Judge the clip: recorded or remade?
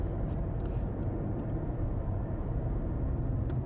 recorded